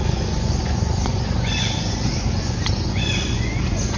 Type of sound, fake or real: fake